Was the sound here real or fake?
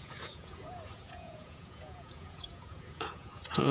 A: fake